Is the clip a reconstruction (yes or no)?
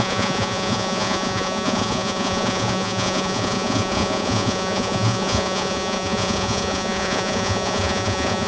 yes